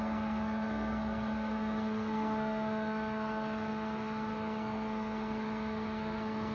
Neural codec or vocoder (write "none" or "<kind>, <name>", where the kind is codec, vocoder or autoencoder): codec, SNAC